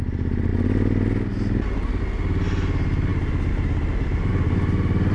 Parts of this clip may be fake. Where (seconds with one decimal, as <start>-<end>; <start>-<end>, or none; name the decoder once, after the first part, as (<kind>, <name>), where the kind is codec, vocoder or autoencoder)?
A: 3.1-4.3 (vocoder, BigVGAN v2)